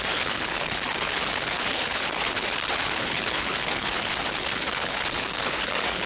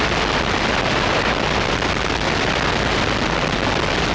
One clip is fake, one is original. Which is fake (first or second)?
first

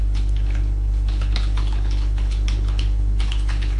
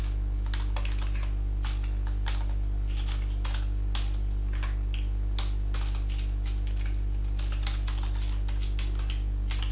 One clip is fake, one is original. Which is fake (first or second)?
first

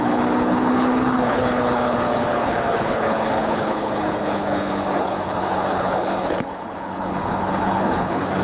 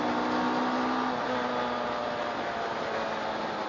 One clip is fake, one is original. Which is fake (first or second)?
first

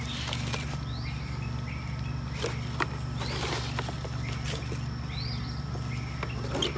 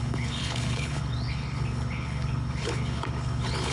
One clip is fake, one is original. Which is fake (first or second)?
second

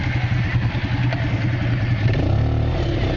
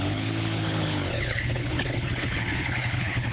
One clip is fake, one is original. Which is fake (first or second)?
second